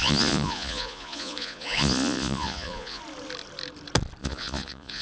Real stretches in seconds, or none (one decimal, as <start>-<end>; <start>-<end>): 3.0-4.2